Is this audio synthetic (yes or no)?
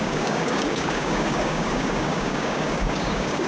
yes